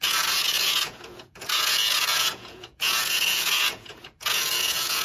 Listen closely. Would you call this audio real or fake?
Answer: fake